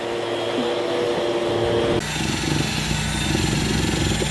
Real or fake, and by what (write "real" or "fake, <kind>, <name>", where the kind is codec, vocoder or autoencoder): real